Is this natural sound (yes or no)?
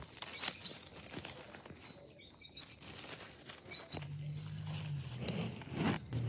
yes